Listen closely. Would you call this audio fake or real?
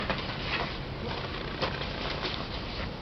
real